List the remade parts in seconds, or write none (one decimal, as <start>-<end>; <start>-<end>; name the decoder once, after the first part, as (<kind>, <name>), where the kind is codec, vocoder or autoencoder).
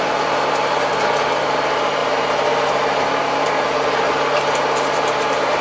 none